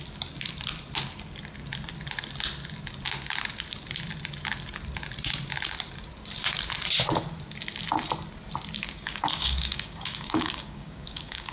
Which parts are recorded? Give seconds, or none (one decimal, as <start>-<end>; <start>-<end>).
0.0-8.8